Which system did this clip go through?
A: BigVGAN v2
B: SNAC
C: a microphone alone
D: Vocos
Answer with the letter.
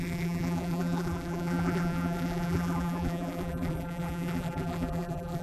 A